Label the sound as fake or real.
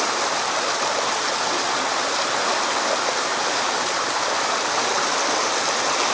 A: real